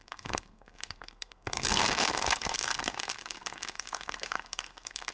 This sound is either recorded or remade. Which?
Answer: remade